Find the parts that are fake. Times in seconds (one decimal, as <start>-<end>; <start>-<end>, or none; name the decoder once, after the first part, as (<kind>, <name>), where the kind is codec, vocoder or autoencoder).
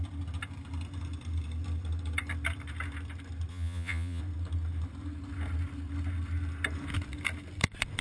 3.5-4.2 (vocoder, Vocos)